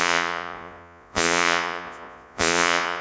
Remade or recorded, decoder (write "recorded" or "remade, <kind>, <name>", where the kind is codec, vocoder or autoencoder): remade, vocoder, Vocos